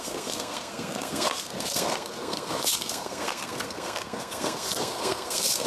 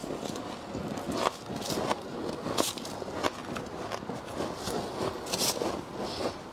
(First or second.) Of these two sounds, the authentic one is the second